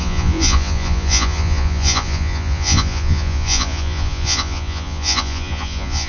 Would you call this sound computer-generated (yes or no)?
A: yes